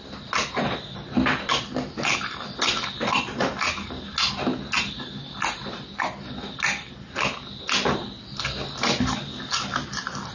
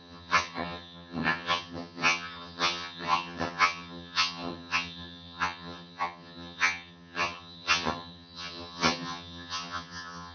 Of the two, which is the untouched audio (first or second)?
first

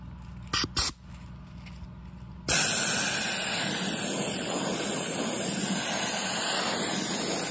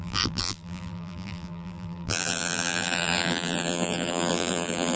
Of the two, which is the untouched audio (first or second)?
first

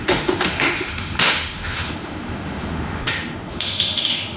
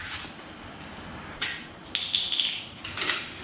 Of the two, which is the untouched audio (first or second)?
second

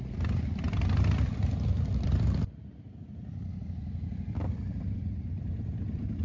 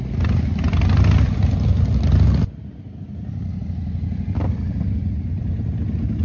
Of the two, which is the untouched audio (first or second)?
second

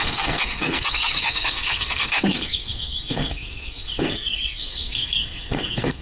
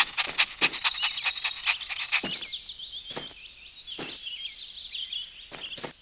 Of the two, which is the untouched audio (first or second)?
second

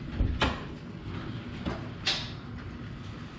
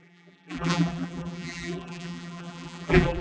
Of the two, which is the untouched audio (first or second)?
first